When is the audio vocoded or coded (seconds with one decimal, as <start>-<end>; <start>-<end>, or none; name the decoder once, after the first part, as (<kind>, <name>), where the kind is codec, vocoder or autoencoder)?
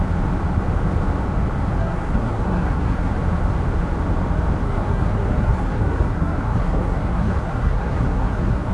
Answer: 1.8-3.1 (codec, SNAC); 4.6-8.7